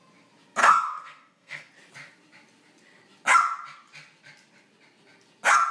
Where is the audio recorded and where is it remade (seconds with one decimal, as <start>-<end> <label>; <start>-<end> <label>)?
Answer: 0.0-0.6 recorded; 0.6-1.7 remade; 1.7-5.7 recorded